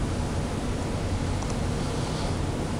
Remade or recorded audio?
recorded